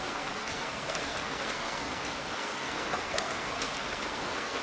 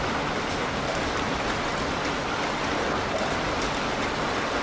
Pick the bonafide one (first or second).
second